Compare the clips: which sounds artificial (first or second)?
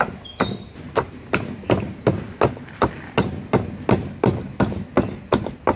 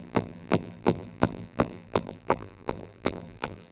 second